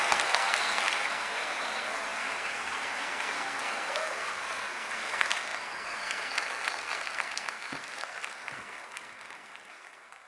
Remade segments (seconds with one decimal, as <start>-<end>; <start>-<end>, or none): 0.0-10.3